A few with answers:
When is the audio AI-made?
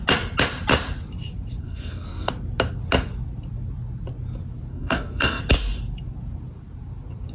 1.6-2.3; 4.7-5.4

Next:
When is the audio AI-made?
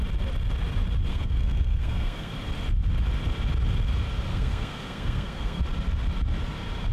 1.1-2.3; 4.3-5.6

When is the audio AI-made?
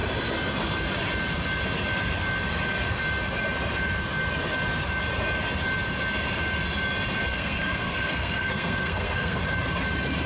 7.3-9.4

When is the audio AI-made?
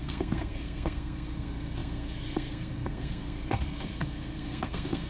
0.0-5.1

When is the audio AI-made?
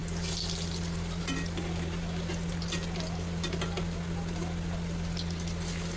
none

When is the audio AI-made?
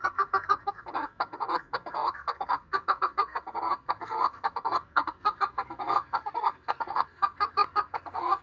0.0-8.4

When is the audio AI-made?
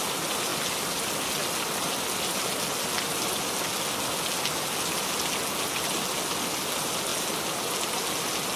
none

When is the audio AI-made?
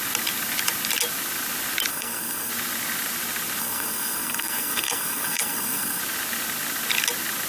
1.9-2.5; 3.6-6.0